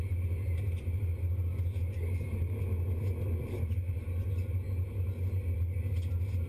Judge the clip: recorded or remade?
recorded